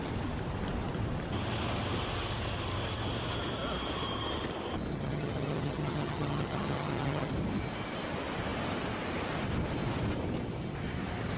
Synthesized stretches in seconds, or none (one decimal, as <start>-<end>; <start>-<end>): 4.9-7.3